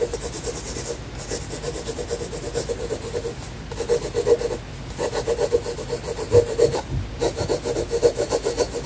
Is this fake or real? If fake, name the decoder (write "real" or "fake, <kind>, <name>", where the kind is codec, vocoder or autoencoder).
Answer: real